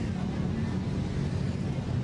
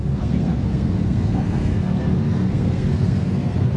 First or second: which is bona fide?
first